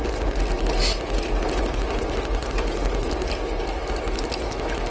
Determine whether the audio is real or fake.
real